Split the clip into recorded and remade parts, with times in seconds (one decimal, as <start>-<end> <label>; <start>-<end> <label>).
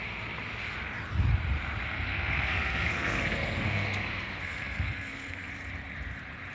0.0-2.1 recorded; 2.1-5.5 remade; 5.5-6.5 recorded